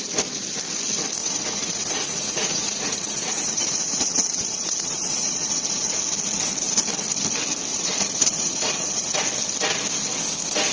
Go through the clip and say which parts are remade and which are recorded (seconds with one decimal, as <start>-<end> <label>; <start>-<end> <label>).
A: 0.0-1.2 recorded; 1.2-6.0 remade; 6.0-7.7 recorded; 7.7-9.2 remade; 9.2-10.7 recorded